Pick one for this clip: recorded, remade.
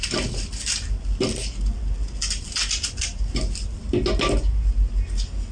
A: recorded